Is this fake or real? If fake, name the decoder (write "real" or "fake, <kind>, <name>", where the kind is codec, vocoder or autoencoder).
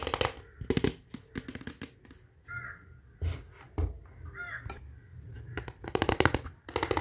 real